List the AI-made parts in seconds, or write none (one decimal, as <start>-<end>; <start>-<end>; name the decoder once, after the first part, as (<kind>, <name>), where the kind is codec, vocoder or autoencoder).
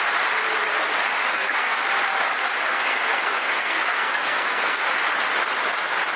1.3-1.8 (codec, SNAC); 2.7-4.9